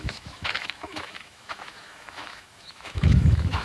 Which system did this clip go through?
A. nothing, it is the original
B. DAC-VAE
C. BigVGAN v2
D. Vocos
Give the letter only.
B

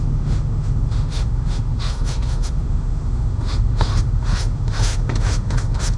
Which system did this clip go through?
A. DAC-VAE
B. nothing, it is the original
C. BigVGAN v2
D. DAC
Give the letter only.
A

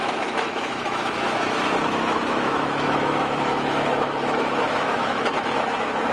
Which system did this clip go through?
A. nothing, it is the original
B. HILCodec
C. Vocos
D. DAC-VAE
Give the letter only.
D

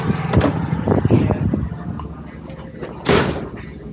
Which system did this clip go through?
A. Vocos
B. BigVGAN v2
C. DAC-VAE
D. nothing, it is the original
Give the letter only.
D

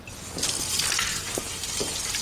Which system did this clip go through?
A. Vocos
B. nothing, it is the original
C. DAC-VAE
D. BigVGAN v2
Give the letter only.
B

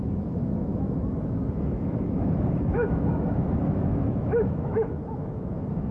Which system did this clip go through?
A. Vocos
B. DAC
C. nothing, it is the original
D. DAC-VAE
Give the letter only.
D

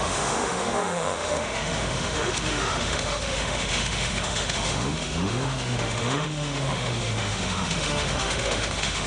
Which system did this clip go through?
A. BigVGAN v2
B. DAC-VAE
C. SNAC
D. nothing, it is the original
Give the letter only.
B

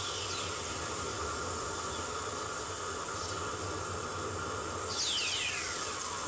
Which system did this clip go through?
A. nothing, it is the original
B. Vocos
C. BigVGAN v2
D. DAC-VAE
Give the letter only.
A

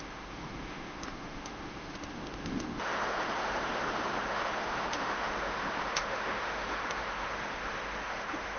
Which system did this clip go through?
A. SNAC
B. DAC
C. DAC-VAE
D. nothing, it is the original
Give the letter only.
C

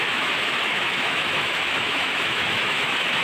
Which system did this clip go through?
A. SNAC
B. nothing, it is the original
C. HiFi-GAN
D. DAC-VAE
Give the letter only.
D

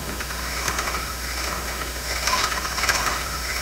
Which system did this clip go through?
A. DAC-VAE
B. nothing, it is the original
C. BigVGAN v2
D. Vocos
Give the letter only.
A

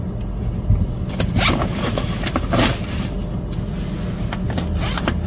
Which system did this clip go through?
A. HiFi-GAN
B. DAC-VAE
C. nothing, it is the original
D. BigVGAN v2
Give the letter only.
C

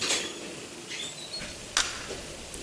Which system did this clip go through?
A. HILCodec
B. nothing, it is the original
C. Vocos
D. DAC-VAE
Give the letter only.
B